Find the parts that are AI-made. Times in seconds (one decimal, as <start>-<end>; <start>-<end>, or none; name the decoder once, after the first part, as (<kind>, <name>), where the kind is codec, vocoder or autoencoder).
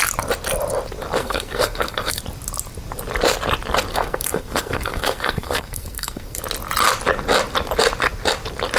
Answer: 1.2-2.2 (codec, SNAC); 3.9-6.4